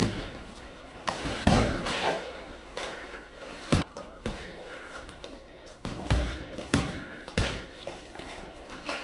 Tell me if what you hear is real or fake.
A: fake